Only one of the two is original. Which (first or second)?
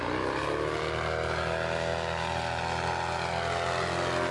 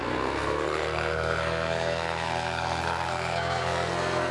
first